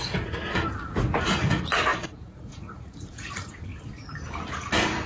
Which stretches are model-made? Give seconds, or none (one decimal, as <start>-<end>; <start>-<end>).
0.0-0.4; 1.4-3.7; 4.5-5.1